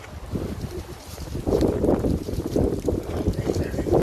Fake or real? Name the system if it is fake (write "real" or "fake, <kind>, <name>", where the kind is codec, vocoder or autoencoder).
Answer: fake, vocoder, BigVGAN v2